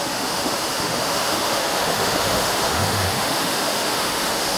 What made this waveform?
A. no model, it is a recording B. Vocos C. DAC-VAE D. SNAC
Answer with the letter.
C